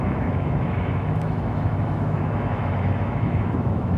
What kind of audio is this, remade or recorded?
remade